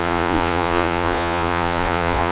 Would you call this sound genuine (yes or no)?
no